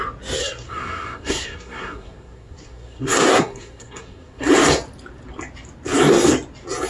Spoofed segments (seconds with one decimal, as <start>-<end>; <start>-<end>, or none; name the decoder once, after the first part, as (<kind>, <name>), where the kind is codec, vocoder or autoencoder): 0.4-4.5 (codec, SNAC)